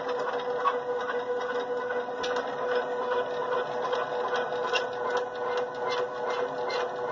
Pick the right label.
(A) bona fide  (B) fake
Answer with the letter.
A